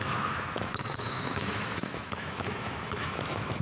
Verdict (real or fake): fake